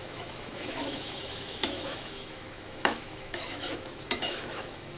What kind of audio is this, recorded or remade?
remade